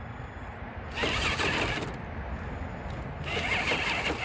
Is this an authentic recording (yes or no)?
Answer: yes